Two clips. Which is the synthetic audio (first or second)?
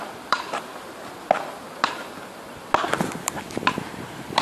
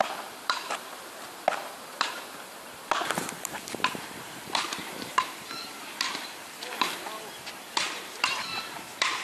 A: second